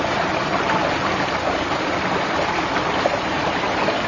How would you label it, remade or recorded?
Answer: recorded